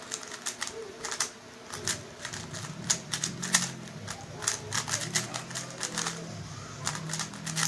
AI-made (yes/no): no